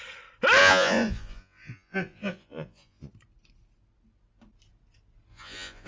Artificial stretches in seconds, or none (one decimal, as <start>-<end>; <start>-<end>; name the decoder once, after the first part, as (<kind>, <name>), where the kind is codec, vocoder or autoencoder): 0.6-3.1 (vocoder, Vocos); 5.3-5.9